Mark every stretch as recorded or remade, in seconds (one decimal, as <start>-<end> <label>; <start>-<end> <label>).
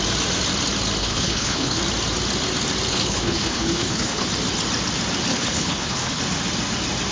0.0-1.0 recorded; 1.0-1.8 remade; 1.8-2.9 recorded; 2.9-4.3 remade; 4.3-5.3 recorded; 5.3-6.2 remade; 6.2-7.1 recorded